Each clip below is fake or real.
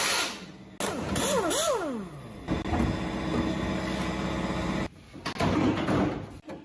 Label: real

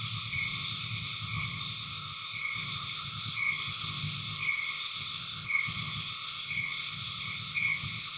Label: fake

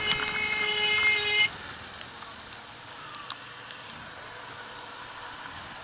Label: real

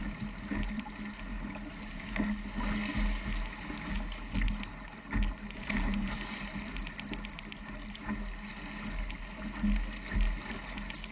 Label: real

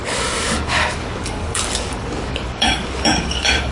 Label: fake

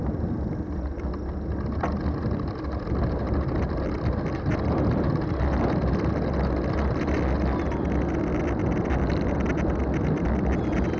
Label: real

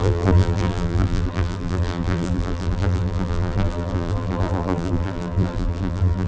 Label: fake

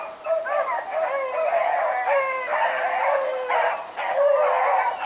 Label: real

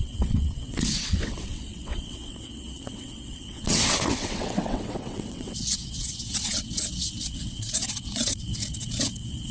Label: fake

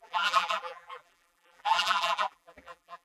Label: fake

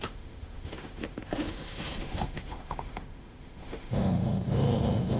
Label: fake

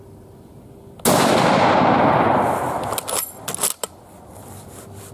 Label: real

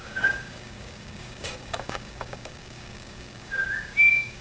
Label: fake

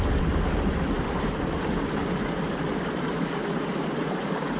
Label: real